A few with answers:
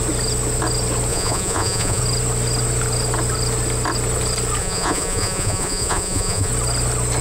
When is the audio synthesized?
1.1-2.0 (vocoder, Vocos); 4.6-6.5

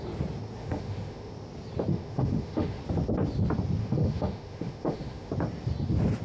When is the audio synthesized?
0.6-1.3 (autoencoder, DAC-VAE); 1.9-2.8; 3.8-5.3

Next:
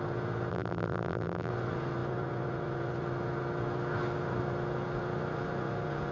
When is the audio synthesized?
0.5-1.5 (vocoder, BigVGAN v2)

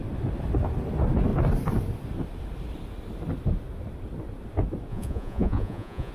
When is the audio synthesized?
4.9-6.1 (vocoder, Vocos)

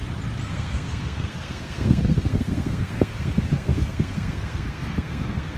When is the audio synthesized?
0.5-5.6 (codec, SNAC)

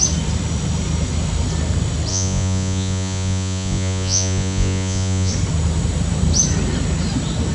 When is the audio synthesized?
2.1-5.3 (vocoder, Vocos)

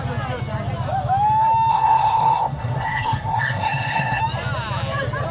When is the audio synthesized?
1.7-4.2 (codec, SNAC)

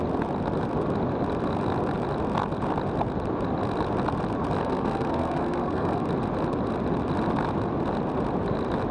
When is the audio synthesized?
4.6-5.9 (codec, SNAC)